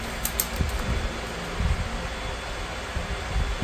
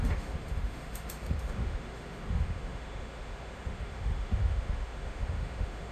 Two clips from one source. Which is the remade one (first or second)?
second